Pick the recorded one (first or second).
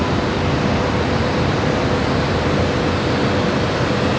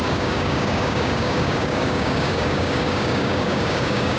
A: first